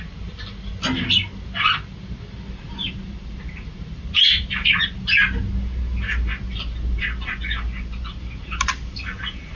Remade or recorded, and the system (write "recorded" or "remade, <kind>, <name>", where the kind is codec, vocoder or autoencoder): recorded